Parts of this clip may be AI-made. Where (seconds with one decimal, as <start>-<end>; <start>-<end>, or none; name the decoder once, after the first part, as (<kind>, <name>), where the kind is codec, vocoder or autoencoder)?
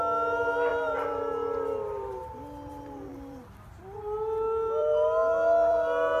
0.7-3.5 (vocoder, BigVGAN v2)